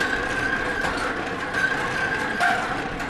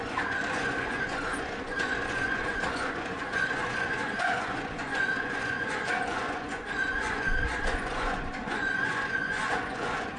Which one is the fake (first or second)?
second